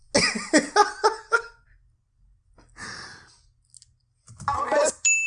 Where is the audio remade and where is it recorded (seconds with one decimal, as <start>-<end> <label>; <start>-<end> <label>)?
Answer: 0.0-5.3 recorded